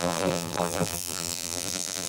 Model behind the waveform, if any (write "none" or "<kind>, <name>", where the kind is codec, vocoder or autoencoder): vocoder, BigVGAN v2